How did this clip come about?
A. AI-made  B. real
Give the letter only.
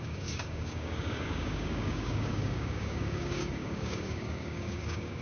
A